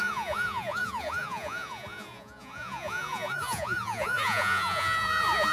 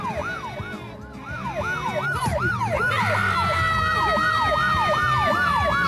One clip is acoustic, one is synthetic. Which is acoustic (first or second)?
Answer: second